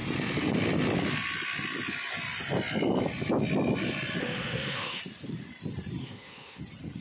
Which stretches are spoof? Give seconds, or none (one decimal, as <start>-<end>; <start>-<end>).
4.2-5.0; 6.0-6.6